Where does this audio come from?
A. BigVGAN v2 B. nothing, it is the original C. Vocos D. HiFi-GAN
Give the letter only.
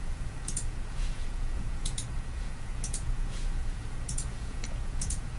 C